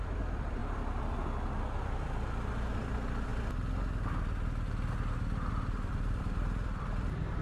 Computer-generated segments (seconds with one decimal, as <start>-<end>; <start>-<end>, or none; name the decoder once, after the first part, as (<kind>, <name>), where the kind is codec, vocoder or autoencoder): 0.0-0.6 (vocoder, BigVGAN v2); 2.7-3.3; 5.5-7.4